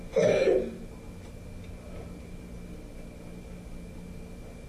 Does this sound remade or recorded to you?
recorded